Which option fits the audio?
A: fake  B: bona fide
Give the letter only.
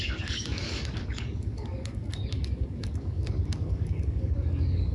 A